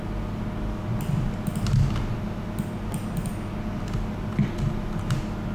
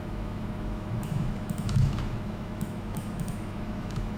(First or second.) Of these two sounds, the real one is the first